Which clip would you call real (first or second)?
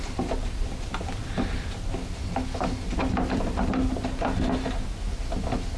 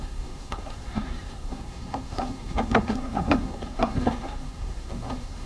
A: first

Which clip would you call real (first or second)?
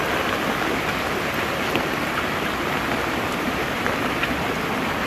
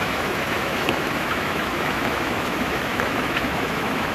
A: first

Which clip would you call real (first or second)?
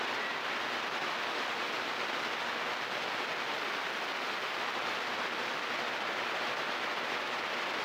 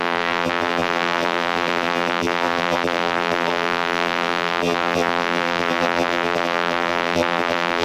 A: first